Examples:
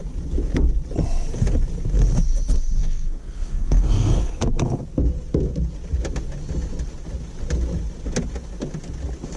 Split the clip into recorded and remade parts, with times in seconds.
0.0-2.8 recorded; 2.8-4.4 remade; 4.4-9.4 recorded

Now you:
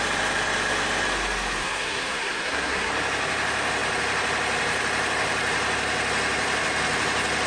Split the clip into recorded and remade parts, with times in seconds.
0.0-1.6 recorded; 1.6-2.9 remade; 2.9-7.5 recorded

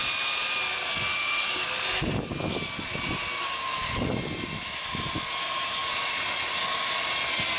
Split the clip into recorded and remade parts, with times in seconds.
0.0-7.6 recorded

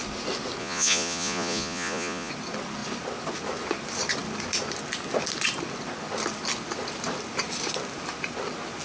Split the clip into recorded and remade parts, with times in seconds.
0.0-0.6 recorded; 0.6-2.3 remade; 2.3-8.8 recorded

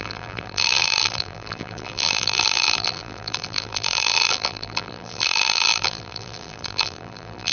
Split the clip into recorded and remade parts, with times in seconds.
0.0-7.5 remade

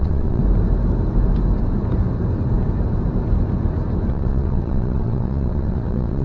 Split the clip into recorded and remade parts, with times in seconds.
0.0-0.4 remade; 0.4-4.1 recorded; 4.1-6.2 remade

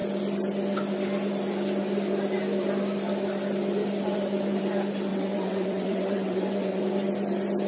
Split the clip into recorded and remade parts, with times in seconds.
0.0-5.1 recorded; 5.1-6.8 remade; 6.8-7.7 recorded